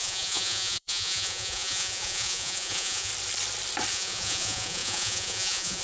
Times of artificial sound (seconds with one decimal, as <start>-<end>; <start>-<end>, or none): 0.0-3.1; 3.9-5.8